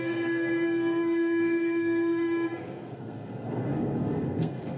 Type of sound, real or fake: fake